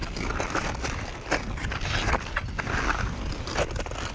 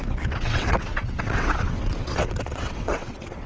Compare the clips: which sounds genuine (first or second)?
first